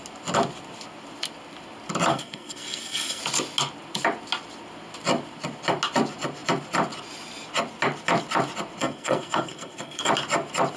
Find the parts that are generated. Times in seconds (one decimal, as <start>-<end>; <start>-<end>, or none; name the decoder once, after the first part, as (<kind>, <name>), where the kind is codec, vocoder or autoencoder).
2.1-3.2 (codec, SNAC); 8.8-10.1